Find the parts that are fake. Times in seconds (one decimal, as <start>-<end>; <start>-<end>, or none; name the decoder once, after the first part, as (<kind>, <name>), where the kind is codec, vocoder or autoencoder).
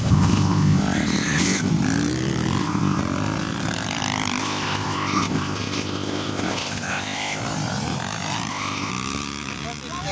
0.0-1.7 (codec, ZipCodec); 2.6-3.0; 4.4-7.4; 8.5-8.9